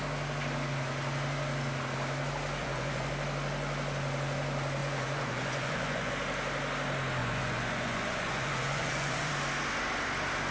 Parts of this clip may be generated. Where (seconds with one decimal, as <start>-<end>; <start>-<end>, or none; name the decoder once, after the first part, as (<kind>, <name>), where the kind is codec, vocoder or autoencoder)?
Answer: 2.6-3.1 (vocoder, Vocos); 4.8-6.1; 7.2-9.3